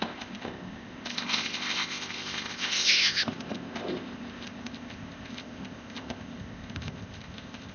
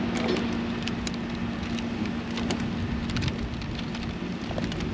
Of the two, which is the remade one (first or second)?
first